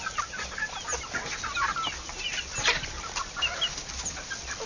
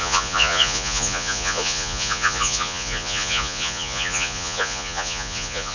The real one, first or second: first